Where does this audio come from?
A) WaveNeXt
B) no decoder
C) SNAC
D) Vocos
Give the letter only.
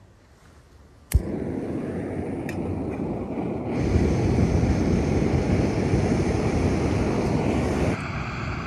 B